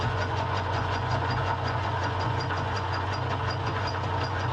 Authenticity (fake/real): fake